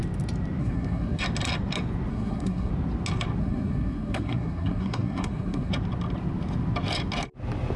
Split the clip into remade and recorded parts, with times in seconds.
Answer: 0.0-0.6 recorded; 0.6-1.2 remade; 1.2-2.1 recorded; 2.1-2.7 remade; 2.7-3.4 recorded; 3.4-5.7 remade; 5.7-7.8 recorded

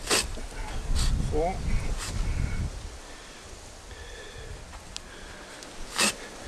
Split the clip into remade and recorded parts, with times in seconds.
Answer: 0.0-6.5 recorded

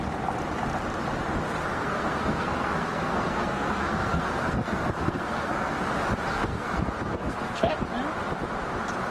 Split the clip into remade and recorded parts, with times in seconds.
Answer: 0.0-1.7 recorded; 1.7-5.8 remade; 5.8-6.3 recorded; 6.3-7.7 remade; 7.7-9.1 recorded

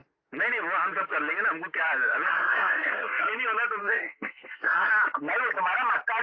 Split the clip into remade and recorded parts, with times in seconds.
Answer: 0.0-2.3 recorded; 2.3-3.2 remade; 3.2-3.8 recorded; 3.8-4.9 remade; 4.9-6.2 recorded

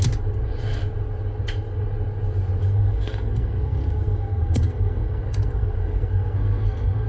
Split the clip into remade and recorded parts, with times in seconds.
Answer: 0.0-2.6 recorded; 2.6-7.1 remade

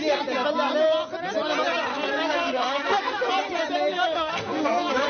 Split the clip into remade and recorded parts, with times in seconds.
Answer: 0.0-1.9 recorded; 1.9-3.3 remade; 3.3-3.9 recorded; 3.9-5.1 remade

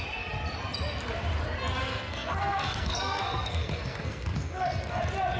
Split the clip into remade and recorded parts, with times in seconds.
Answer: 0.0-1.8 recorded; 1.8-5.0 remade; 5.0-5.4 recorded